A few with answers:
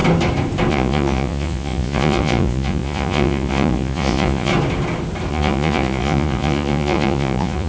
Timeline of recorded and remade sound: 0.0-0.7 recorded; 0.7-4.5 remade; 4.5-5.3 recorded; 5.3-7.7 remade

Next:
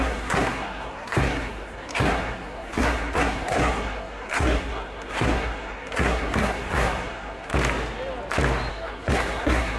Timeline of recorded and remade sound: 0.0-7.5 remade; 7.5-8.7 recorded; 8.7-9.8 remade

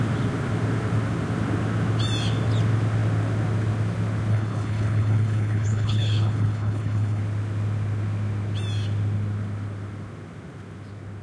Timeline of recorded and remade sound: 0.0-4.3 recorded; 4.3-7.2 remade; 7.2-11.2 recorded